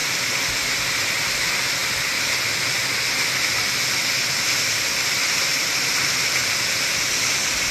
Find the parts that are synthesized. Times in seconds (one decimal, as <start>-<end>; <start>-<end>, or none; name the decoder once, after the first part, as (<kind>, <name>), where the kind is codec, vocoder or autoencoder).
0.0-1.0 (vocoder, BigVGAN v2); 6.4-7.1